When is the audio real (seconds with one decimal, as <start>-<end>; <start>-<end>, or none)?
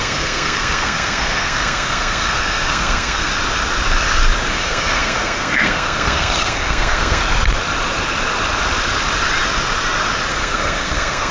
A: 3.3-4.5; 7.2-10.3